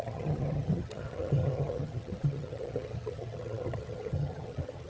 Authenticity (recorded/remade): remade